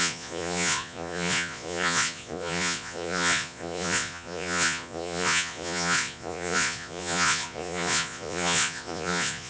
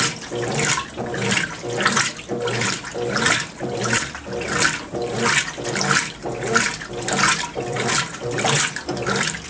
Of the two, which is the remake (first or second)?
first